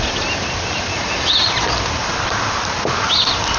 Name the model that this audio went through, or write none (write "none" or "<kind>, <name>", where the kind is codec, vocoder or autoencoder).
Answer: none